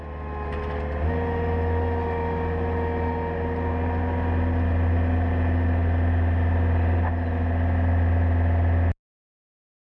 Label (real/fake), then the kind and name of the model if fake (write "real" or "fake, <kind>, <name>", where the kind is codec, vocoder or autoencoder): real